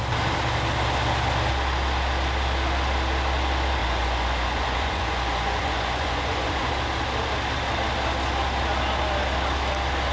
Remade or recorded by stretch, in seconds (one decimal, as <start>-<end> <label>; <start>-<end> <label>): 0.0-3.8 recorded; 3.8-6.7 remade; 6.7-10.1 recorded